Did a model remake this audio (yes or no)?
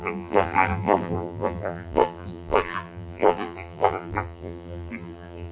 yes